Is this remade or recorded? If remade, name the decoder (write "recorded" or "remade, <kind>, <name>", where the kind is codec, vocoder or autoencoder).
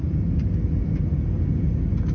recorded